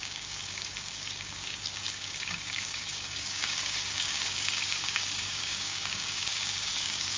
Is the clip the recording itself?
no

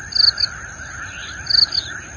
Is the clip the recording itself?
yes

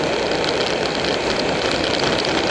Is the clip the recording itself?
yes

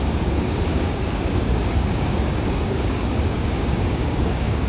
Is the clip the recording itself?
no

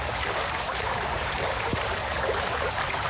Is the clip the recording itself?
no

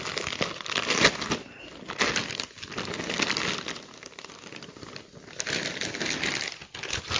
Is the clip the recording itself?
yes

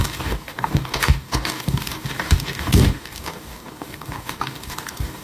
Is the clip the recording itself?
no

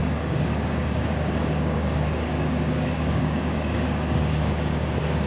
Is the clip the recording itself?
no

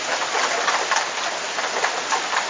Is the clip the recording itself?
yes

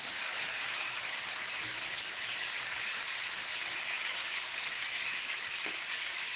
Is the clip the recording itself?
no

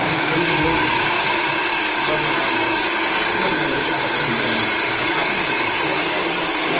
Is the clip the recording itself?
no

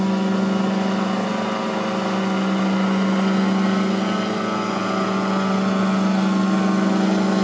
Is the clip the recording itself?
yes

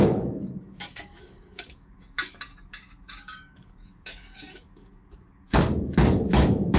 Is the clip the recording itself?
no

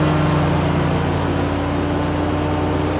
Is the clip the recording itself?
yes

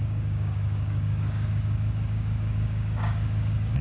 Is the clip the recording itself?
no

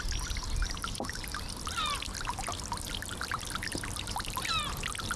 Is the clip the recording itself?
yes